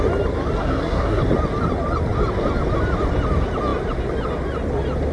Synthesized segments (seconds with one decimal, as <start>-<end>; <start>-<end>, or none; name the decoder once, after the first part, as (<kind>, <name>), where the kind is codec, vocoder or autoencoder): 0.6-1.2 (codec, SNAC)